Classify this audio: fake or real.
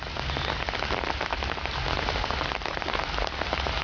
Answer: real